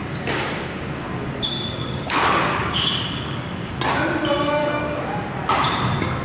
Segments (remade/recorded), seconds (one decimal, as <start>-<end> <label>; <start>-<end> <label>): 0.0-3.7 remade; 3.7-4.6 recorded; 4.6-5.3 remade; 5.3-6.2 recorded